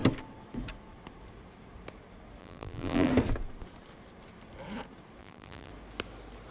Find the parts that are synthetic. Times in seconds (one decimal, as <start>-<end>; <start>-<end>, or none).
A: 2.4-3.1; 5.2-5.7